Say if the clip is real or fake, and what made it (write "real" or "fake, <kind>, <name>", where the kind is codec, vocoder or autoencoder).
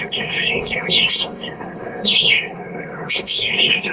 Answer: fake, codec, SNAC